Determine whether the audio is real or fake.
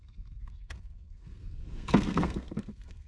fake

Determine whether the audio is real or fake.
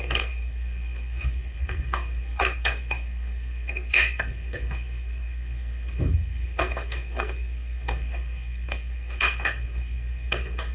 fake